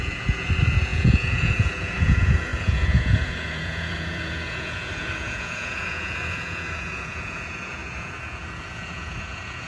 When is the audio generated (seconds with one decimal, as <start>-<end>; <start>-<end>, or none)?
0.0-9.7